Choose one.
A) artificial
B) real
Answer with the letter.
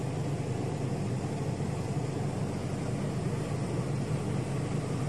B